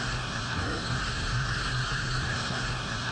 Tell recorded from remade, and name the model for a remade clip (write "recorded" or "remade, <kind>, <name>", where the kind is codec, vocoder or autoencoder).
remade, codec, SNAC